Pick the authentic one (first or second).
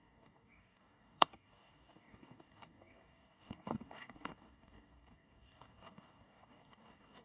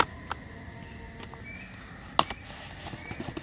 second